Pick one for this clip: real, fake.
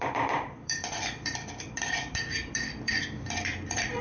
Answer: fake